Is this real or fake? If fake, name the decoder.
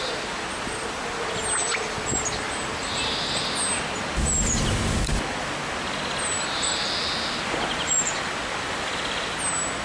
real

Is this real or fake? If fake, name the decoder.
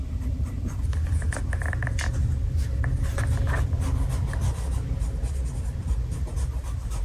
real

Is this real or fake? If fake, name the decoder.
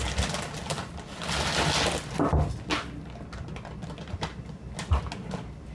real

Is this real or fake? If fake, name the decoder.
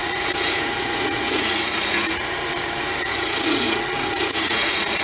fake, vocoder, Vocos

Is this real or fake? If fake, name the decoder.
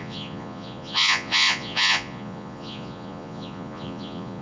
fake, vocoder, Vocos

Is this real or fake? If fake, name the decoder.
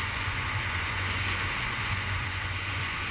fake, vocoder, Vocos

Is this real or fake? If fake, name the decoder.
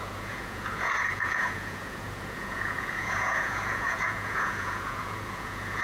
fake, vocoder, Vocos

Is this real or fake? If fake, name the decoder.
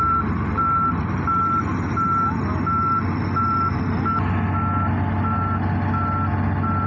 real